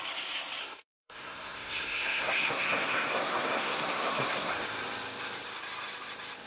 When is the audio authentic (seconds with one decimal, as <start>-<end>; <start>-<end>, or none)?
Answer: 0.0-0.6; 4.5-6.5